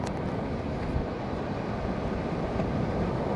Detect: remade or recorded recorded